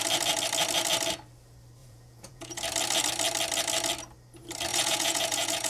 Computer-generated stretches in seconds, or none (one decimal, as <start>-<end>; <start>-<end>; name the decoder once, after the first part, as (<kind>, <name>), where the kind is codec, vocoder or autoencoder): 1.8-2.6 (vocoder, Vocos); 4.7-5.7